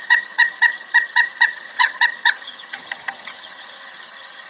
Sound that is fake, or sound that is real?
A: fake